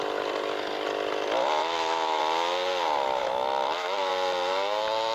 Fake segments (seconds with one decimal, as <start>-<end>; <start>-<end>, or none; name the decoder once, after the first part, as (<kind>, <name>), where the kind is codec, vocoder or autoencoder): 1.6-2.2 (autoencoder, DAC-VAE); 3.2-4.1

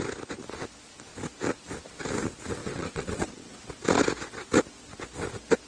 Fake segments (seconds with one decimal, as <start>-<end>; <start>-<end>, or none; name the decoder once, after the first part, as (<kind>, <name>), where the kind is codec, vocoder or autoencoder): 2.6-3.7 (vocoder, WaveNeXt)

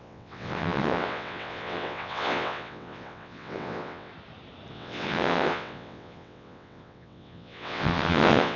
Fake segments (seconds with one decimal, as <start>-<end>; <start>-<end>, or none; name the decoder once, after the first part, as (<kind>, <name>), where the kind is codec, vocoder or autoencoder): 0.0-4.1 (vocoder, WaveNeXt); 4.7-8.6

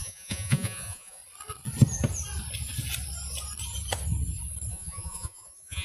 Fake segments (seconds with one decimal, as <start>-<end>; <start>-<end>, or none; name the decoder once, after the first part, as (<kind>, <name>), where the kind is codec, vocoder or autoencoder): 0.0-1.2 (vocoder, Vocos); 4.7-5.8

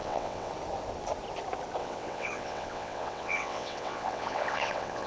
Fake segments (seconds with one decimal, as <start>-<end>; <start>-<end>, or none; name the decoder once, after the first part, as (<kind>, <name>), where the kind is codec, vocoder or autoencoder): 0.0-0.5 (vocoder, WaveNeXt); 1.8-5.1

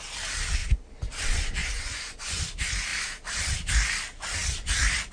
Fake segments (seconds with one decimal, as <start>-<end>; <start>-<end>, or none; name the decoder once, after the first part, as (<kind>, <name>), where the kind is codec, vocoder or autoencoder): 1.6-2.4 (vocoder, Vocos)

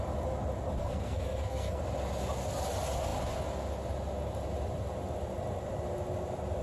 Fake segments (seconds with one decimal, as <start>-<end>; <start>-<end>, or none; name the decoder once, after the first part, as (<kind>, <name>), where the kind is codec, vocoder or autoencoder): 0.8-1.8 (codec, SNAC)